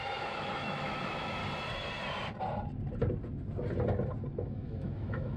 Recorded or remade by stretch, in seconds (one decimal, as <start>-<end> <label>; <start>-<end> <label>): 0.0-1.4 remade; 1.4-4.4 recorded; 4.4-5.4 remade